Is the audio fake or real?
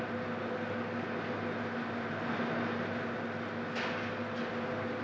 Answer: real